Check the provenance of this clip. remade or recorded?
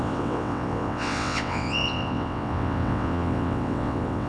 remade